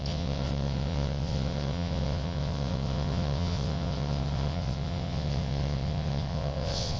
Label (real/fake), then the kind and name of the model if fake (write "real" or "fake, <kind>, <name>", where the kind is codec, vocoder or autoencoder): fake, vocoder, WaveNeXt